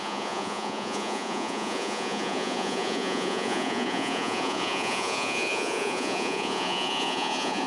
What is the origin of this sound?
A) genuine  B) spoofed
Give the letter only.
B